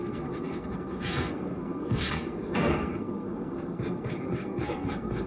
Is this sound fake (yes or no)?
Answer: yes